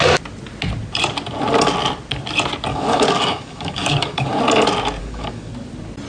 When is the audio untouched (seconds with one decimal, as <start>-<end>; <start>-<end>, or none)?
0.0-2.7; 4.4-5.0; 5.5-6.1